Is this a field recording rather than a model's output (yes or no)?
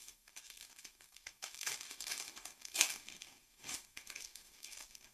no